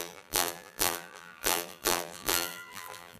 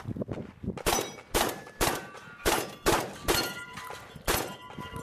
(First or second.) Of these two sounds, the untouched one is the second